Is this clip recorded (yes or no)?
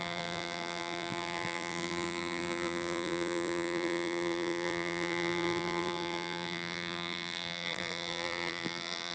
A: no